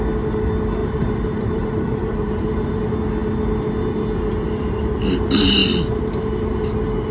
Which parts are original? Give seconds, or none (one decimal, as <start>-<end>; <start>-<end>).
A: 0.0-0.8; 2.8-7.1